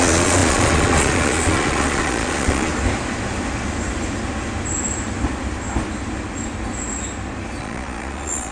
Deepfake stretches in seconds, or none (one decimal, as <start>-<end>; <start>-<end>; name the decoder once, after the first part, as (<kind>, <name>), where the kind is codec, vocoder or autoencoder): 0.0-2.7 (vocoder, Vocos); 7.6-8.5